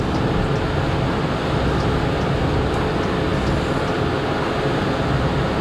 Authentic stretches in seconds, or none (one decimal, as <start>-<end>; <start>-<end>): 0.0-5.6